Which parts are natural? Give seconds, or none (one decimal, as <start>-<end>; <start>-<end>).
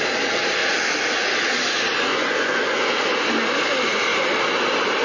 0.0-2.1; 2.8-5.0